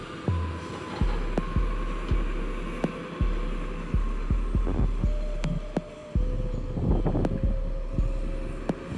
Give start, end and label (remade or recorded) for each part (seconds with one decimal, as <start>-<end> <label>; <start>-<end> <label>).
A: 0.0-9.0 recorded